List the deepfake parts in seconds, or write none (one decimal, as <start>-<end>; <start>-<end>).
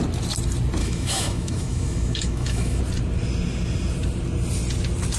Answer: 0.8-2.8